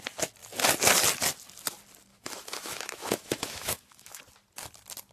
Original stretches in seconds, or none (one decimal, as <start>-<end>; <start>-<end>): 0.0-2.1; 4.2-5.1